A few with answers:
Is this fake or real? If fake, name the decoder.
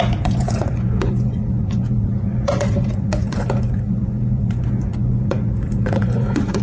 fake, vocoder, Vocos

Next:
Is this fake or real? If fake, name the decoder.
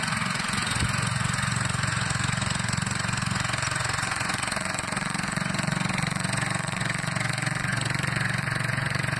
fake, vocoder, Vocos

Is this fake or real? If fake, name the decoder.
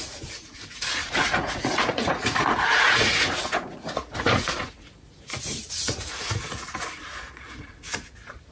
fake, vocoder, Vocos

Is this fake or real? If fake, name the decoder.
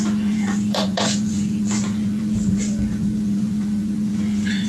fake, vocoder, Vocos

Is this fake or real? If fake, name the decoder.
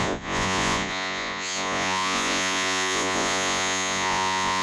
fake, vocoder, Vocos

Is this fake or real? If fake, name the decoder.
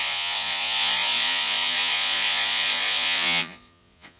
fake, vocoder, Vocos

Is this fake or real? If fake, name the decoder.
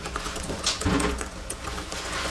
fake, vocoder, Vocos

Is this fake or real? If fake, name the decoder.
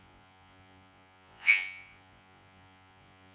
fake, vocoder, Vocos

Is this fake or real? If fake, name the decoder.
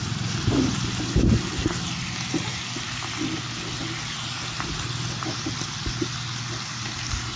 real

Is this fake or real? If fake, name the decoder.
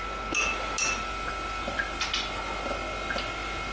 real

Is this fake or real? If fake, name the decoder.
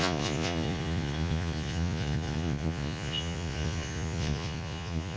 fake, vocoder, Vocos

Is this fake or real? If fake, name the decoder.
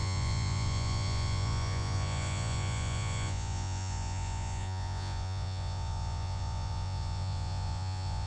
fake, vocoder, Vocos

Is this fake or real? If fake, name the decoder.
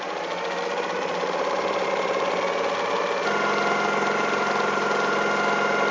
real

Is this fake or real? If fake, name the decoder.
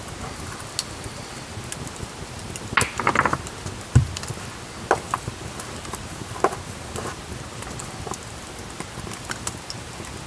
real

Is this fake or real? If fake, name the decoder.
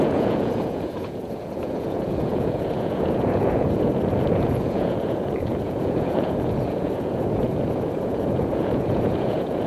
fake, vocoder, Vocos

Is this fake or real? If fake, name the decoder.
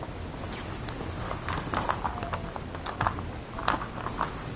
real